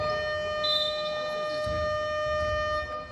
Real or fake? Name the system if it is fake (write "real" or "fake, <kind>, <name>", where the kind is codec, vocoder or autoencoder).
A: real